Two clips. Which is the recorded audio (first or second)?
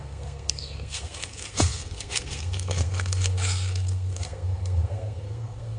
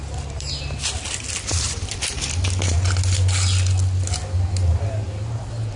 second